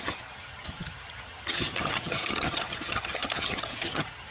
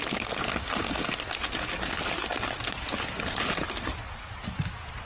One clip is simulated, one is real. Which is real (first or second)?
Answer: second